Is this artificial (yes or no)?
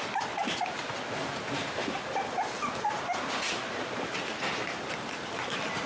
no